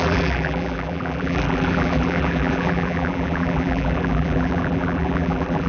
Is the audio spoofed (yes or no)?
yes